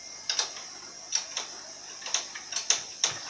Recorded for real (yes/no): yes